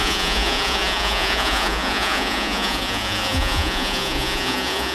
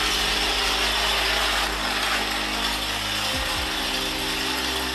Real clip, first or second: second